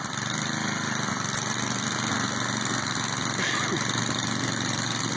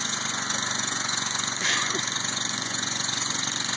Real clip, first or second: first